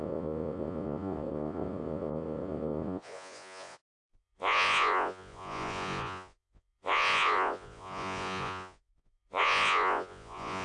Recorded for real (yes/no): no